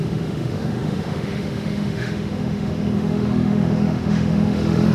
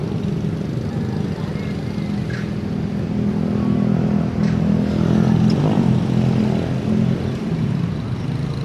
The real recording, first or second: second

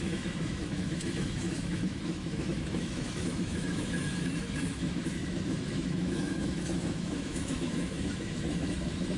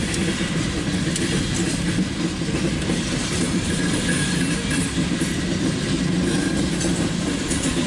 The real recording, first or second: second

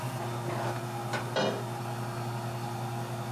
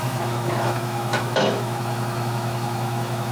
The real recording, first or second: first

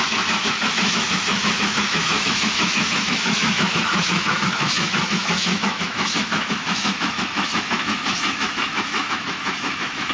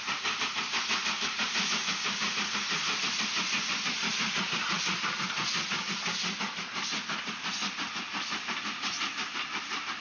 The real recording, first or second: second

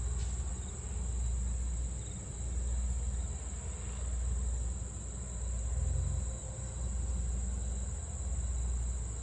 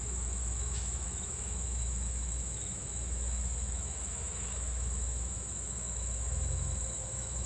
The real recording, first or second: first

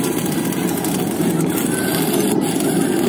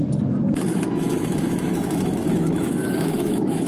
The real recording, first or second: first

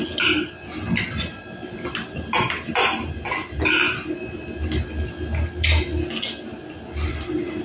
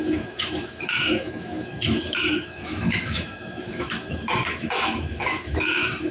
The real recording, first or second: first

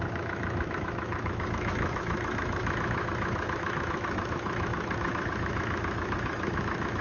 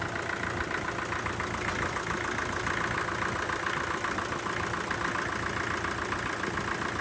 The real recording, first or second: second